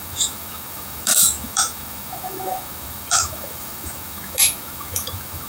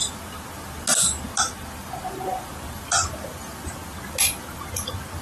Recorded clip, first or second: second